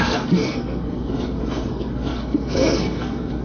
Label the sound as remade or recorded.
remade